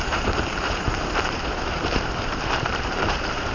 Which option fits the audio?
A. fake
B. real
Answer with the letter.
A